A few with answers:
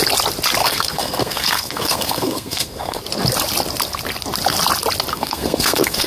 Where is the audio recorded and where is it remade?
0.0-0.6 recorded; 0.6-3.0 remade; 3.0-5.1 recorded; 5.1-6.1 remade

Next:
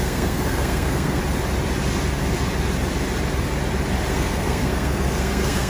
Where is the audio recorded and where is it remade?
0.0-1.2 remade; 1.2-4.1 recorded; 4.1-5.7 remade

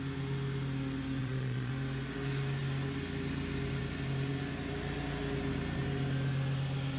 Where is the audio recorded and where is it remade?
0.0-1.2 recorded; 1.2-1.7 remade; 1.7-7.0 recorded

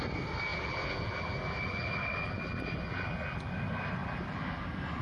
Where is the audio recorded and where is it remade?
0.0-0.5 recorded; 0.5-3.5 remade; 3.5-4.0 recorded; 4.0-4.6 remade; 4.6-5.0 recorded

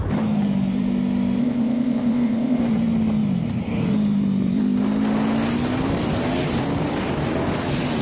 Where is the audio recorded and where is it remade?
0.0-1.4 recorded; 1.4-2.6 remade; 2.6-8.0 recorded

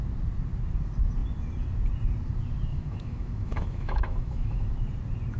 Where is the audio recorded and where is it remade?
0.0-2.7 recorded; 2.7-4.7 remade; 4.7-5.4 recorded

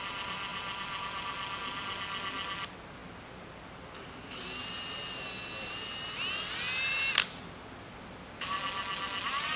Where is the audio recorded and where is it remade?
0.0-9.6 recorded